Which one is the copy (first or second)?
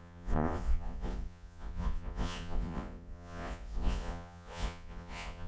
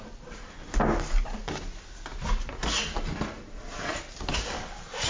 first